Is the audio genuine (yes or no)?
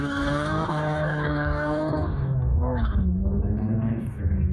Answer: no